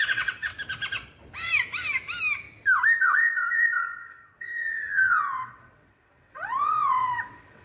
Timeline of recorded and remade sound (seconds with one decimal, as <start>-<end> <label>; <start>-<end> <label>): 0.0-0.5 remade; 0.5-3.0 recorded; 3.0-7.6 remade